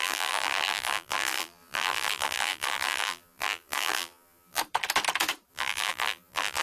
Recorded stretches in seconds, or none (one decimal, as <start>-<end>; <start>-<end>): 4.6-5.5